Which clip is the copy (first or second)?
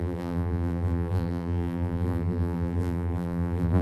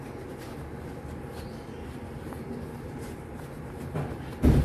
first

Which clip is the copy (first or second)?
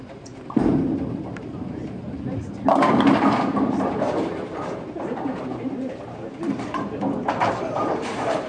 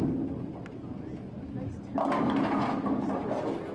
first